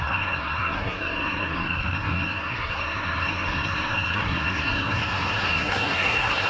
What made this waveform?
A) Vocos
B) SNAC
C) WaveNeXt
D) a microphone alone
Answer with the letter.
B